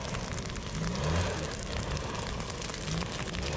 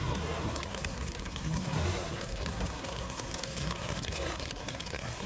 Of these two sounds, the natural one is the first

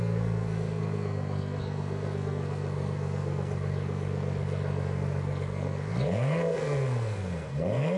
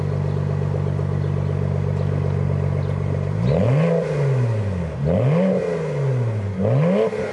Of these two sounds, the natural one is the second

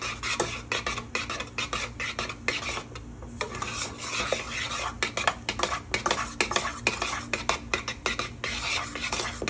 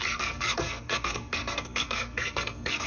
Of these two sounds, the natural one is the first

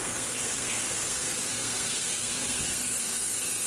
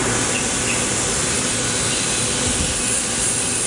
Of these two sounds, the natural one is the second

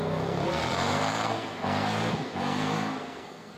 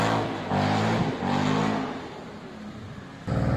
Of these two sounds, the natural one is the second